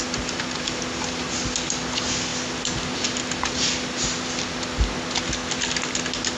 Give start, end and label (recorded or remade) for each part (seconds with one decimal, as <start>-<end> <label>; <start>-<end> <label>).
0.0-6.4 recorded